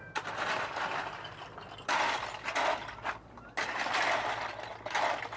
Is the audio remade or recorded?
recorded